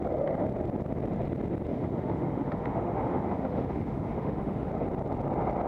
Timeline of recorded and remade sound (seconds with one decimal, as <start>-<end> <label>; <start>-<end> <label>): 0.0-1.7 recorded; 1.7-4.7 remade; 4.7-5.7 recorded